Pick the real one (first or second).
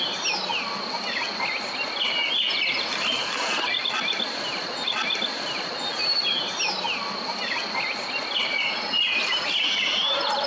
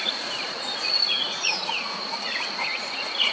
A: first